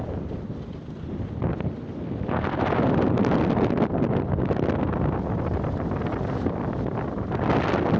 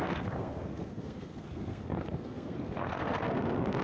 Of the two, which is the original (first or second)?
first